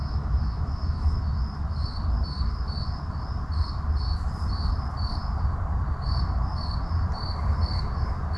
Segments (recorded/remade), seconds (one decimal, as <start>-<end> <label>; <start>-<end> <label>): 0.0-1.2 remade; 1.2-8.4 recorded